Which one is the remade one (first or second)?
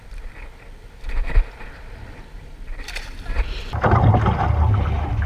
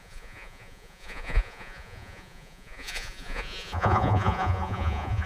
second